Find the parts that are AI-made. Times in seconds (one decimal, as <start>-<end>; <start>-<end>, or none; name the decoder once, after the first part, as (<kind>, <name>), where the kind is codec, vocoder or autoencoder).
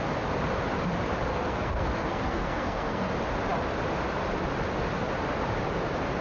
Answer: 1.3-3.1 (codec, SNAC)